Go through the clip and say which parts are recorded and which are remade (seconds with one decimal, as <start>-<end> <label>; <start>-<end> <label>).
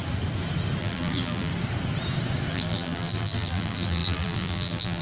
0.0-0.8 recorded; 0.8-1.5 remade; 1.5-2.5 recorded; 2.5-5.0 remade